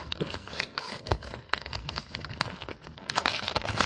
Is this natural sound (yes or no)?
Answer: no